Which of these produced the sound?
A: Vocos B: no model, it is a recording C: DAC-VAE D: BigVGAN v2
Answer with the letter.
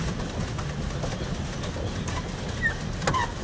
B